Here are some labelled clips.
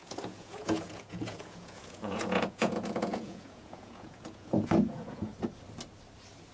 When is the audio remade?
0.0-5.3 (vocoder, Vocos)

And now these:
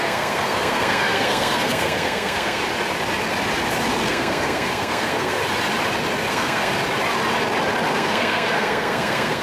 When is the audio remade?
0.0-2.6 (codec, SNAC); 4.1-5.4; 6.3-6.7; 7.9-9.4

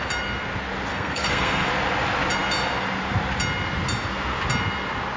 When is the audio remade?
0.9-1.7 (codec, SNAC)

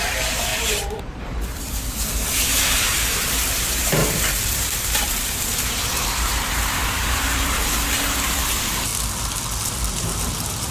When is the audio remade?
0.0-8.9 (vocoder, BigVGAN v2); 9.7-10.7

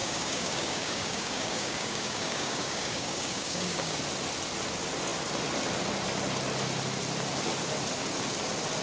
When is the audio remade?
0.0-4.0 (codec, DAC)

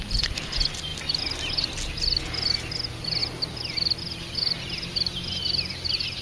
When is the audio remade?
none